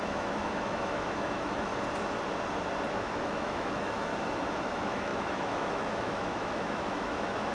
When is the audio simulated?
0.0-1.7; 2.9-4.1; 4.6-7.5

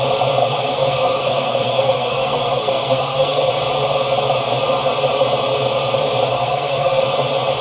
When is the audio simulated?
0.4-3.5; 6.3-7.0